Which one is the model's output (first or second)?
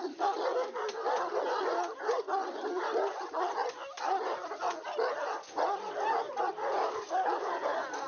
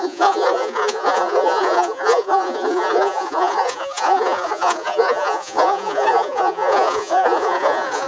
second